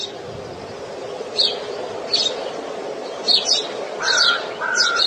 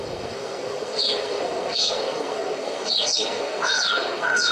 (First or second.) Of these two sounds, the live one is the first